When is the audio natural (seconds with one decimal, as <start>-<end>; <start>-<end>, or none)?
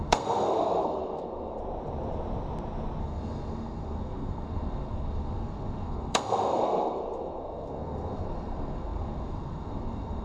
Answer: 1.6-3.0